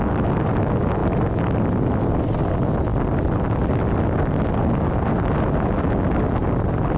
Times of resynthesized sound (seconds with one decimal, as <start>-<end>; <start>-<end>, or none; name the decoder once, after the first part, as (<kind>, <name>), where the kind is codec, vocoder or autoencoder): none